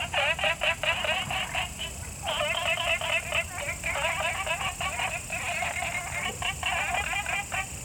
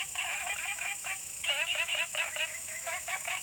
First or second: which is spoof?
second